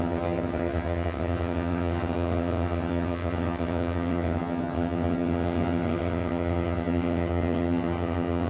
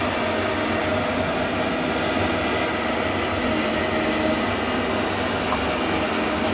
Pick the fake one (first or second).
first